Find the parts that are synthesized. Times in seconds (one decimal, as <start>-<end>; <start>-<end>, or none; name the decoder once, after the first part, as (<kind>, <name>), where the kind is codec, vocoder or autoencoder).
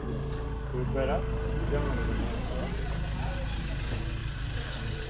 4.2-5.1 (vocoder, BigVGAN v2)